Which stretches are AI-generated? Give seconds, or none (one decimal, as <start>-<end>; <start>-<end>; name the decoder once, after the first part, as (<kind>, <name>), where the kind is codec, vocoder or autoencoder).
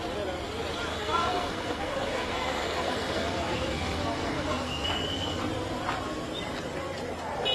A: 0.9-5.4 (codec, SNAC)